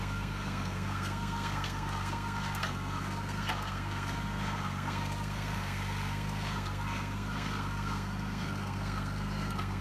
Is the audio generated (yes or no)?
yes